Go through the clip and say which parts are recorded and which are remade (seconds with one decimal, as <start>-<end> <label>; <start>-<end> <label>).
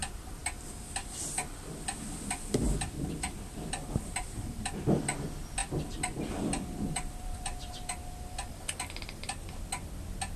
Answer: 0.0-5.6 recorded; 5.6-8.5 remade; 8.5-10.4 recorded